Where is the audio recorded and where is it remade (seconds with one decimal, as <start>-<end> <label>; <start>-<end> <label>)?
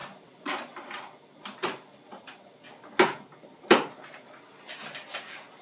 0.0-3.4 remade; 3.4-5.6 recorded